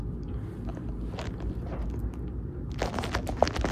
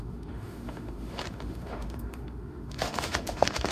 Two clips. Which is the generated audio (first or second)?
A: second